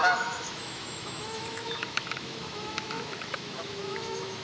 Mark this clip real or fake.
fake